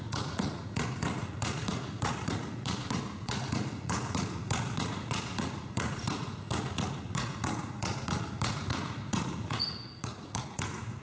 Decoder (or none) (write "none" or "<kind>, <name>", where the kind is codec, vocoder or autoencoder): vocoder, Vocos